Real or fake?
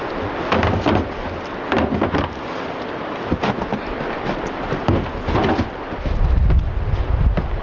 real